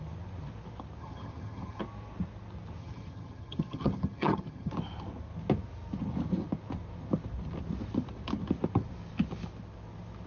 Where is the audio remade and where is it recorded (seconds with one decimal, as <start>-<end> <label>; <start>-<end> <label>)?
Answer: 0.0-1.0 recorded; 1.0-1.8 remade; 1.8-2.8 recorded; 2.8-4.7 remade; 4.7-10.3 recorded